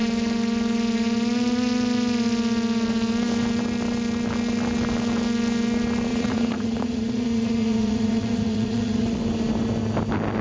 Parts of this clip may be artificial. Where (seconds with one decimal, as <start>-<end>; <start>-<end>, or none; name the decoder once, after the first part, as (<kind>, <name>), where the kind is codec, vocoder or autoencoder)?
6.1-9.2 (vocoder, Vocos)